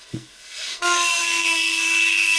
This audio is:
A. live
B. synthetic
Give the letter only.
B